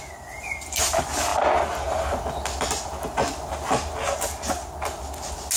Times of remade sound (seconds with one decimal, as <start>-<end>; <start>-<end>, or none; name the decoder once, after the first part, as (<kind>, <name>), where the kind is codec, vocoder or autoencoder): none